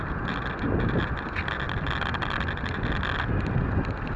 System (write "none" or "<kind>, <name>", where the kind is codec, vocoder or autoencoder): none